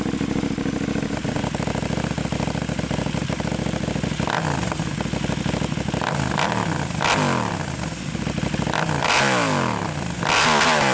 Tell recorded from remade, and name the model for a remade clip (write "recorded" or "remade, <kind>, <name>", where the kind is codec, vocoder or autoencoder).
recorded